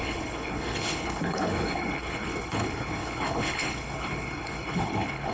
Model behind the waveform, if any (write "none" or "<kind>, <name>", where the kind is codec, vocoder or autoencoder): codec, HILCodec